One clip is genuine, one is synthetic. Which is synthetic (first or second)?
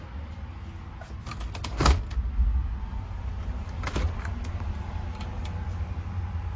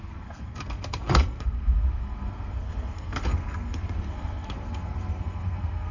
second